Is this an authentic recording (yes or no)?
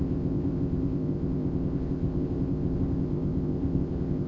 no